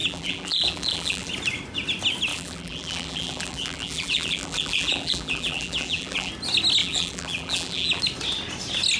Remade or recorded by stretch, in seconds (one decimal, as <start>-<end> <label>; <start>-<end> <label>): 0.0-1.3 remade; 1.3-2.3 recorded; 2.3-6.3 remade; 6.3-6.8 recorded; 6.8-8.0 remade; 8.0-9.0 recorded